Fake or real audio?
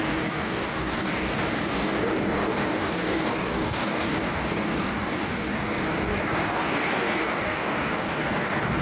fake